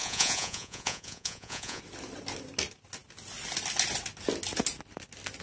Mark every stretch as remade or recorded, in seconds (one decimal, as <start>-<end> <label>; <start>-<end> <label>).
0.0-1.8 remade; 1.8-5.4 recorded